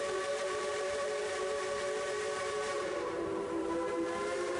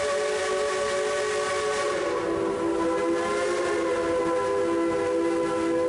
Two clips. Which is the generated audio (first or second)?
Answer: first